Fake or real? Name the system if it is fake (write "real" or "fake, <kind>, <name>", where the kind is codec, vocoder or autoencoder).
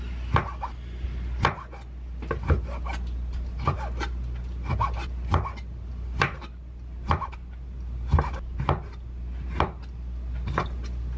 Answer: real